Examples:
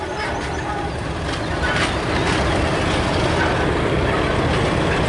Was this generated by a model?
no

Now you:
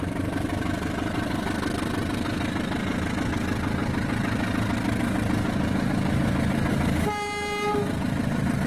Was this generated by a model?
no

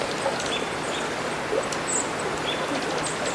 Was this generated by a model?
no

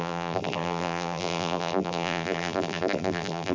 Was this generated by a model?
yes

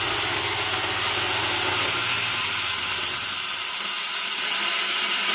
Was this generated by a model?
no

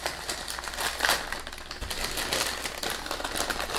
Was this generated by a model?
no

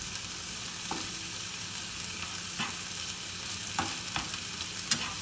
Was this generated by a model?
no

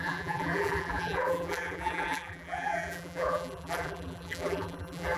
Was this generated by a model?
yes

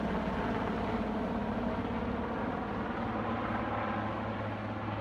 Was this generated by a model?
no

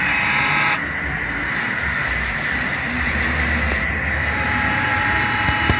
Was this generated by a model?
yes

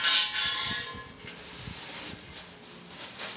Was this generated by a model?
no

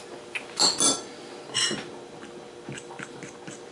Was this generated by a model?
no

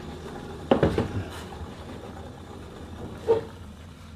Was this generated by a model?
no